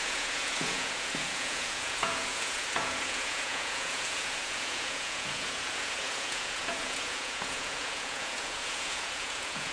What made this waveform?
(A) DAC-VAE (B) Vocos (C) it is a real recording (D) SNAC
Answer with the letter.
B